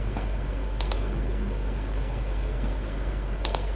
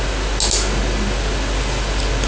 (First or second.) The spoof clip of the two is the first